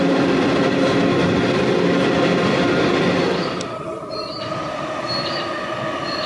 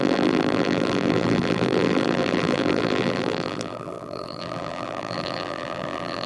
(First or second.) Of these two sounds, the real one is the first